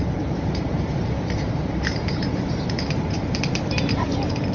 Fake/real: fake